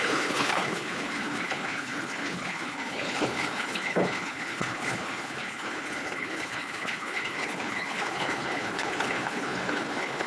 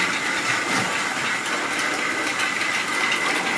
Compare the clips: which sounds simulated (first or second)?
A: first